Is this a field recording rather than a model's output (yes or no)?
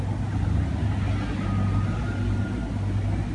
yes